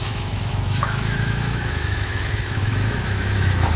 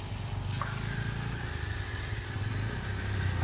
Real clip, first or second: second